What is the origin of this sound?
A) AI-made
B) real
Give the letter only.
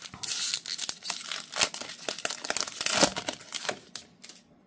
B